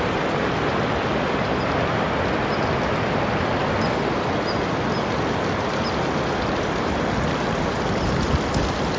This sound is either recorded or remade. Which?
recorded